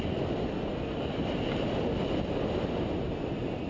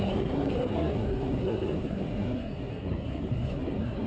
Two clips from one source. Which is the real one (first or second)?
first